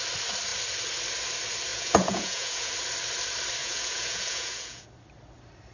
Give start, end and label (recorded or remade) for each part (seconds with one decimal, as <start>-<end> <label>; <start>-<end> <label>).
0.0-1.7 recorded; 1.7-2.7 remade; 2.7-3.6 recorded; 3.6-4.9 remade; 4.9-5.7 recorded